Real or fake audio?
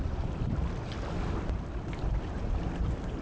real